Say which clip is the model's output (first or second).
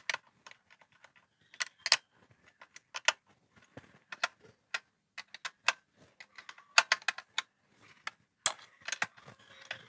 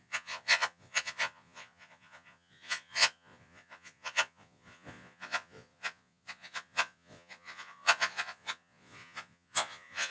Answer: second